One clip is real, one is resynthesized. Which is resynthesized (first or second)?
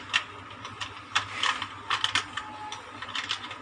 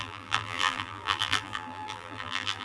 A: second